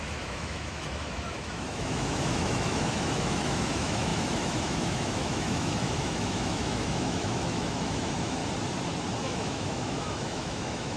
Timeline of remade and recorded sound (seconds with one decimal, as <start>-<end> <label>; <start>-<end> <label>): 0.0-8.4 remade; 8.4-9.2 recorded; 9.2-11.0 remade